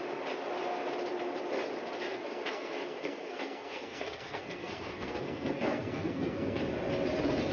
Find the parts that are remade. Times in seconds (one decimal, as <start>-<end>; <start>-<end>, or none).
2.1-6.6